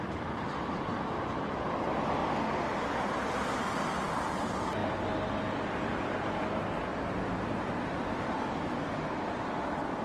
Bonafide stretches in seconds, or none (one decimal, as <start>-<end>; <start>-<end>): 2.2-3.0; 4.8-5.4; 6.9-7.6